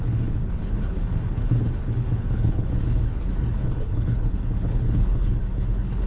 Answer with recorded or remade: remade